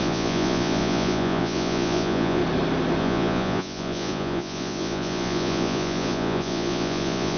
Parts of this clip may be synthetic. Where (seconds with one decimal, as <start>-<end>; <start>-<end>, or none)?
0.0-2.4; 3.0-7.4